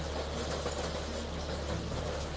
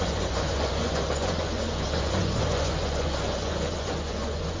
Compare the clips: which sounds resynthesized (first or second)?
second